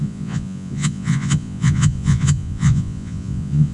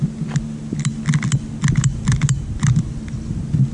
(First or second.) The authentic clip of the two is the second